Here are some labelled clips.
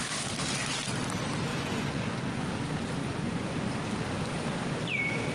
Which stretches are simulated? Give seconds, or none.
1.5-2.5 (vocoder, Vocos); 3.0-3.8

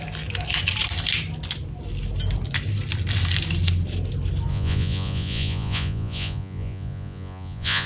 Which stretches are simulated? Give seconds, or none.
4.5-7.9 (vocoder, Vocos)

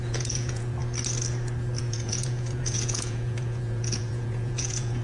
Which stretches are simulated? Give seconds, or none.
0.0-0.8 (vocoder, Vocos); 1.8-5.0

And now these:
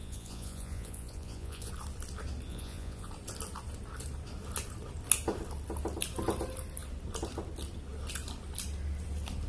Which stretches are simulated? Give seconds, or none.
0.0-1.7 (vocoder, Vocos); 2.5-3.1

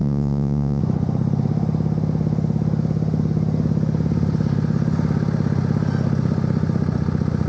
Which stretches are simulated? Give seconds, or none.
0.0-0.8 (vocoder, Vocos)

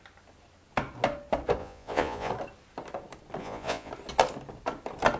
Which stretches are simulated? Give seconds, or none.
1.6-2.3 (vocoder, Vocos); 3.4-3.9

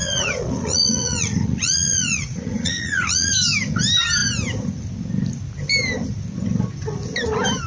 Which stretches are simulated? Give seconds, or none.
0.0-3.3 (vocoder, Vocos)

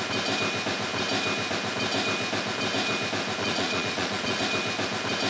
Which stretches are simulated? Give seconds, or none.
3.4-4.4 (vocoder, Vocos)